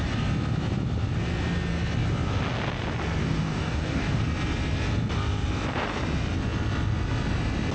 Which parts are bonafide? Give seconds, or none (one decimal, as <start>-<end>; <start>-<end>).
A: 0.0-3.2; 4.2-7.7